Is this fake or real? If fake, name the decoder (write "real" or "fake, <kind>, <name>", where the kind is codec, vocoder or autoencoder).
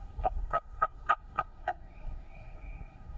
fake, codec, SNAC